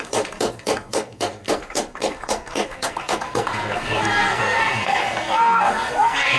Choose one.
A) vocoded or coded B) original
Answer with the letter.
A